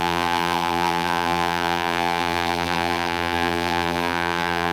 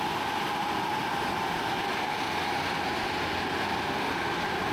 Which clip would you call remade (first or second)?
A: first